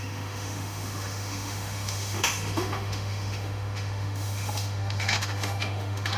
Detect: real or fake fake